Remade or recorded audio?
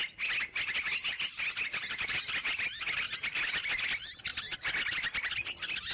recorded